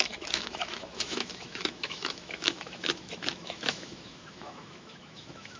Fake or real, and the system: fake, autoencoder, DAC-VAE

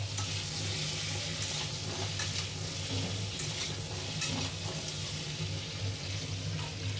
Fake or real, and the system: real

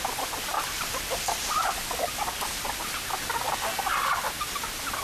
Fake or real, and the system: real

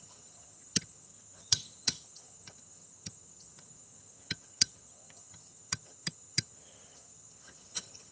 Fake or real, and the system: fake, vocoder, HiFi-GAN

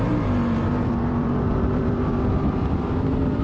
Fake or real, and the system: fake, vocoder, BigVGAN v2